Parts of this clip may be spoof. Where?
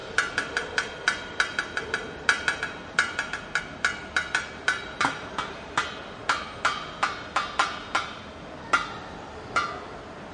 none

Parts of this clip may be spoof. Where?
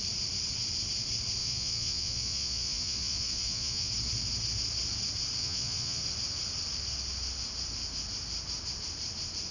1.4-3.9 (vocoder, Vocos); 5.4-6.0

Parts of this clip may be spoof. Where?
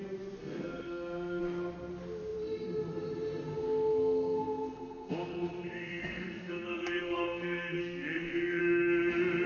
0.4-1.4 (codec, SNAC); 3.5-8.6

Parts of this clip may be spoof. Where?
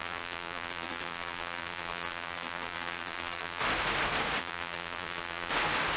0.0-3.6 (vocoder, BigVGAN v2); 4.4-5.5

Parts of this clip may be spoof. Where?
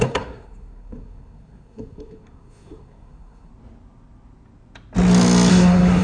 0.0-3.5 (codec, SNAC); 5.5-6.0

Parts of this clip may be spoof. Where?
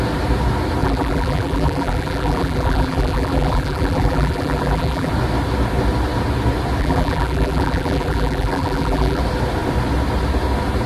0.8-5.1 (vocoder, BigVGAN v2); 6.8-9.2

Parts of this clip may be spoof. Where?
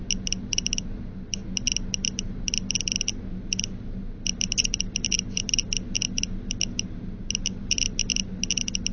none